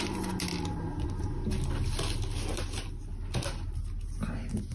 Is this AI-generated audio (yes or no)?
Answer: no